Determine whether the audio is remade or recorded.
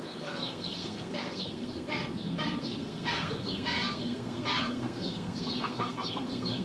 remade